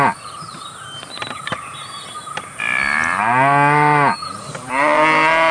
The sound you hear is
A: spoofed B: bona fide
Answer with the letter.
B